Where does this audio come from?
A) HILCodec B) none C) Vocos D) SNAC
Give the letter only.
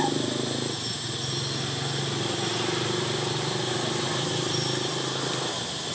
B